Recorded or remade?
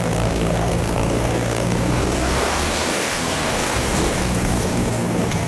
remade